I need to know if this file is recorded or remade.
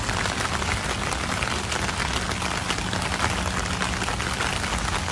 recorded